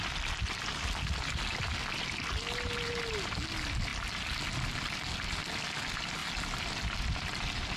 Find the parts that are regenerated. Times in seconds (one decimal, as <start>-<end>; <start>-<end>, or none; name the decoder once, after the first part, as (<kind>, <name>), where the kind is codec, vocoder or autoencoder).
none